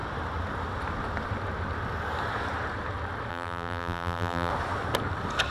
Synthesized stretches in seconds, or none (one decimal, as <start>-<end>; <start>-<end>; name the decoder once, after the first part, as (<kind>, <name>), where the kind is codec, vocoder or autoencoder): 3.3-4.5 (vocoder, BigVGAN v2)